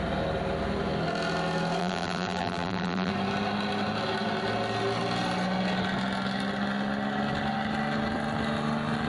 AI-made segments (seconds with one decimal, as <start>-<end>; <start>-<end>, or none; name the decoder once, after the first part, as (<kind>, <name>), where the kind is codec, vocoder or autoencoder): 1.8-3.1 (vocoder, BigVGAN v2)